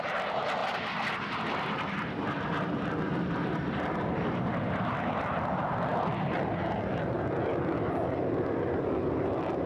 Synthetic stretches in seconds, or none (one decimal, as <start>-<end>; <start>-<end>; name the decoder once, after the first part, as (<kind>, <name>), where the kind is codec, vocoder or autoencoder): none